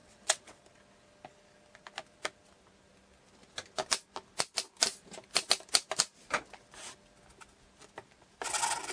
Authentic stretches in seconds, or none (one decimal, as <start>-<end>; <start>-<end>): 0.6-8.9